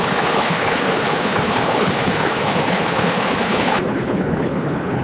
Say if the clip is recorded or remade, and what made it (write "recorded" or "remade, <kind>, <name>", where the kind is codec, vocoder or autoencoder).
remade, codec, HILCodec